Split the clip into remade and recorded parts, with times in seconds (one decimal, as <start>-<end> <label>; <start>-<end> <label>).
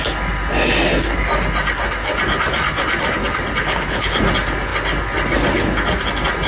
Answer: 0.0-3.6 recorded; 3.6-4.2 remade; 4.2-6.5 recorded